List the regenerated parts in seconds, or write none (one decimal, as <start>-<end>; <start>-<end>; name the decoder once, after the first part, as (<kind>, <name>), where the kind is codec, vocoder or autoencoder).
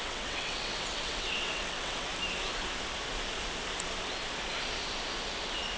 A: 0.0-2.1 (vocoder, WaveNeXt)